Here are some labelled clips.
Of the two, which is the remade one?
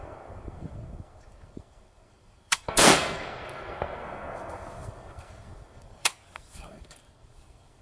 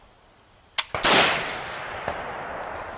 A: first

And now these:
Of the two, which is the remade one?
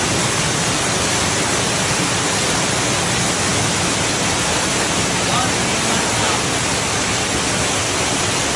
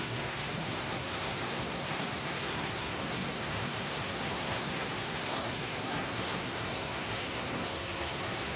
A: second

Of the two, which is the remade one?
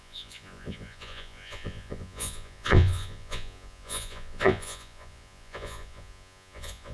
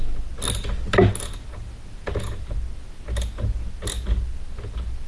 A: first